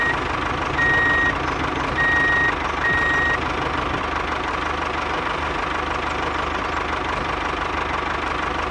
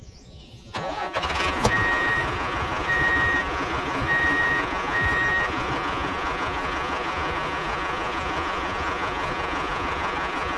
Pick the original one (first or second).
first